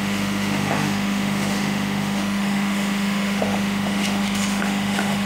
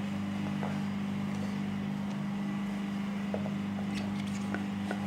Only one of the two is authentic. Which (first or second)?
second